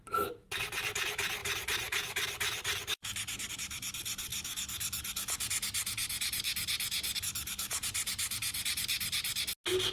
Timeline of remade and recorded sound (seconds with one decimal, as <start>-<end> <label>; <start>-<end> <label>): 0.0-1.4 recorded; 1.4-3.5 remade; 3.5-7.7 recorded; 7.7-9.4 remade; 9.4-9.9 recorded